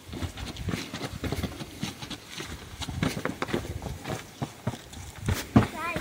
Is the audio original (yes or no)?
yes